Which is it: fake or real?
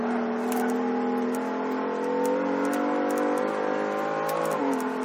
real